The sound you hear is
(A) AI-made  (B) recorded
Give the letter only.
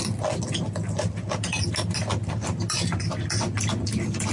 B